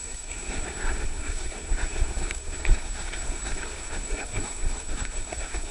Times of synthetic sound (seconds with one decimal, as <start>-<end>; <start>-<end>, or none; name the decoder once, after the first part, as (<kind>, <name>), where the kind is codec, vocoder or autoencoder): 0.0-5.7 (codec, SNAC)